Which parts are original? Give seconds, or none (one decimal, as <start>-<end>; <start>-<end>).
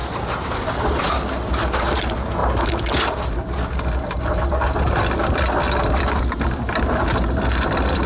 0.0-8.1